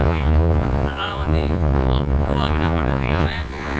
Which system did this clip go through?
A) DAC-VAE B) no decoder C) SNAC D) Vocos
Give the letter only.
D